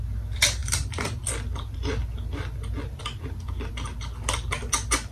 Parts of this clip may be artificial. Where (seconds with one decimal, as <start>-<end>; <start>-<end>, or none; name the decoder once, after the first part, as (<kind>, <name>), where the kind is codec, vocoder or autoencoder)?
none